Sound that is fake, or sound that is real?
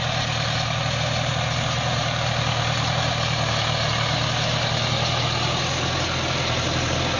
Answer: real